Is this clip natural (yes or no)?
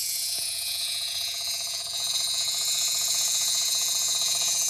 no